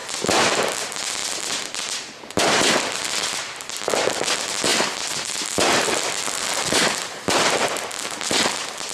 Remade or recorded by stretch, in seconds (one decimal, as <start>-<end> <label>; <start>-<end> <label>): 0.0-0.6 remade; 0.6-1.2 recorded; 1.2-3.9 remade; 3.9-4.7 recorded; 4.7-7.4 remade; 7.4-8.9 recorded